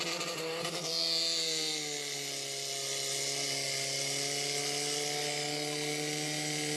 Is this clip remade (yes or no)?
no